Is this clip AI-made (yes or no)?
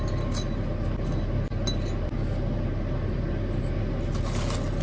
no